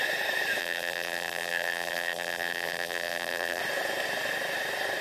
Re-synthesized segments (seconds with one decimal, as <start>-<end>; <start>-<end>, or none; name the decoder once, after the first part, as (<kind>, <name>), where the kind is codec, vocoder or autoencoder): 0.6-3.6 (vocoder, BigVGAN v2)